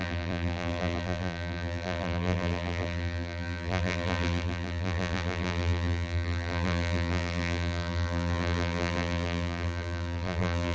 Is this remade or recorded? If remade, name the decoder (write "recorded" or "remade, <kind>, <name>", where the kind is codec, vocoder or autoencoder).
remade, vocoder, BigVGAN v2